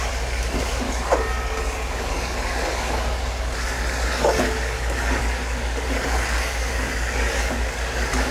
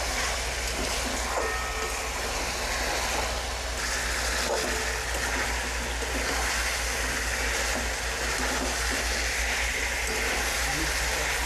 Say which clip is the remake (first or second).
first